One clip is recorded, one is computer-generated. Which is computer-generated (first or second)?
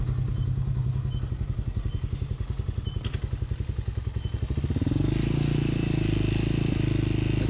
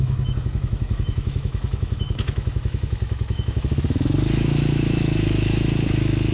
second